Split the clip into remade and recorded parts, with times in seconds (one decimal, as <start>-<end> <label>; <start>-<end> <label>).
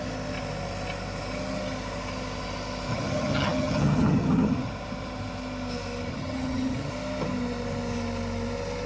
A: 0.0-2.9 recorded; 2.9-4.7 remade; 4.7-6.1 recorded; 6.1-6.9 remade; 6.9-8.9 recorded